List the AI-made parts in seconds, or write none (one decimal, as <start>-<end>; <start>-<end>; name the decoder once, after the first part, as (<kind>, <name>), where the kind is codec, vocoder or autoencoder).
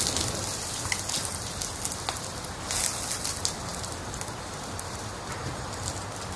3.7-4.6 (vocoder, BigVGAN v2)